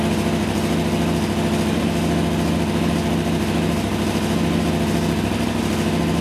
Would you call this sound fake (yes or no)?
no